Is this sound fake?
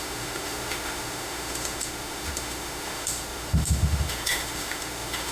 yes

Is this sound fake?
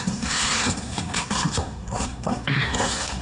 yes